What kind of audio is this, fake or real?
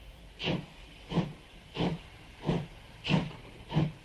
fake